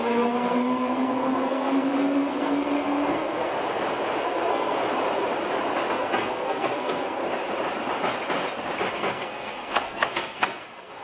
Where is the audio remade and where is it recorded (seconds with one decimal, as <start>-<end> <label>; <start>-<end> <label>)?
0.0-3.5 remade; 3.5-4.2 recorded; 4.2-4.8 remade; 4.8-5.9 recorded; 5.9-7.2 remade; 7.2-8.9 recorded; 8.9-11.0 remade